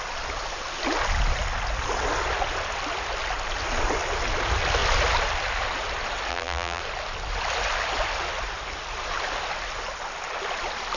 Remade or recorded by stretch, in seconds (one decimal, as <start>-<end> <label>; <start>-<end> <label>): 0.0-6.3 recorded; 6.3-6.8 remade; 6.8-11.0 recorded